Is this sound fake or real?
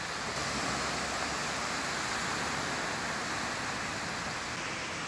real